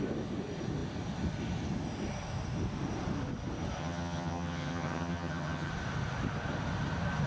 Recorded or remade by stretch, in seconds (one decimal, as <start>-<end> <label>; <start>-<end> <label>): 0.0-3.8 recorded; 3.8-5.7 remade; 5.7-7.3 recorded